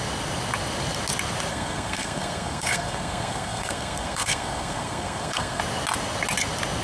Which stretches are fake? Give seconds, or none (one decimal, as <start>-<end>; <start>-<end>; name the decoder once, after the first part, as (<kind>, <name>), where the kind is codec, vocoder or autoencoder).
1.5-5.6 (codec, SNAC)